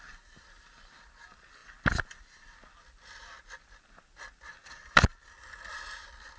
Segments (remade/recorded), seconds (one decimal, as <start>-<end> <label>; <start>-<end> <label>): 0.0-6.4 recorded